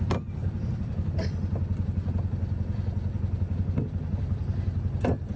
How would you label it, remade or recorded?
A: recorded